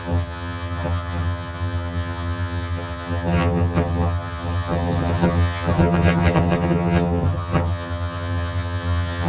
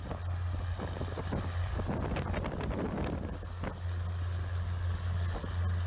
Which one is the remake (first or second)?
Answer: first